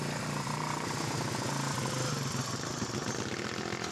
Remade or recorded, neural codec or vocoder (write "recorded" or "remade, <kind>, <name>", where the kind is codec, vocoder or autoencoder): recorded